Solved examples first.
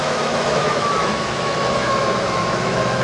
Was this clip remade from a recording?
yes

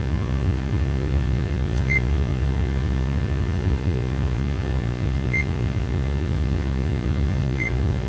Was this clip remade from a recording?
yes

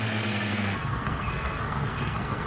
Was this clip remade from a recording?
yes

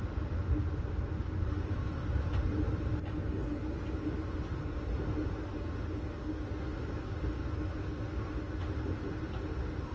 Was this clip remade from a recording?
no